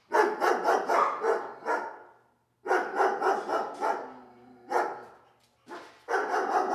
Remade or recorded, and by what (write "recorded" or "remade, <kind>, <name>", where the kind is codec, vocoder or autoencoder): recorded